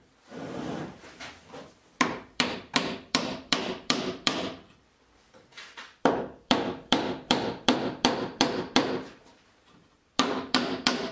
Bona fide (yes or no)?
no